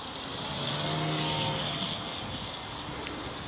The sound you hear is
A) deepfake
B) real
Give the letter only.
B